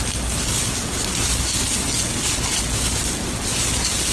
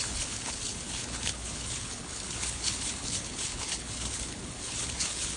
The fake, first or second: second